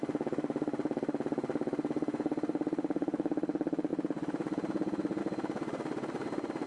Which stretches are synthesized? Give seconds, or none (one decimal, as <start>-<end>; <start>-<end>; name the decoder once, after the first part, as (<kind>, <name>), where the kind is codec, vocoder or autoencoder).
0.0-3.9 (vocoder, BigVGAN v2); 5.2-6.7